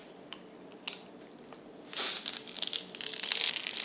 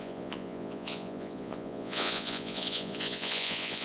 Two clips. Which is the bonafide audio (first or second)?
first